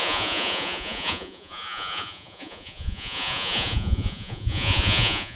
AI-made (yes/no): yes